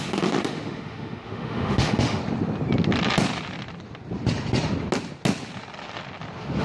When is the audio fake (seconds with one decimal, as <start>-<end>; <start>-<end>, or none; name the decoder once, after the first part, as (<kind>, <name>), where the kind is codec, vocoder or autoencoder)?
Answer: 0.0-2.2 (autoencoder, DAC-VAE)